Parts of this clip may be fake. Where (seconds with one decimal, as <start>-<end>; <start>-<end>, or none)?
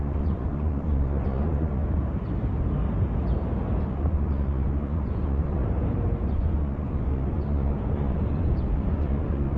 0.0-1.8; 3.8-5.6; 6.3-9.6